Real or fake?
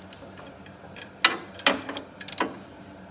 real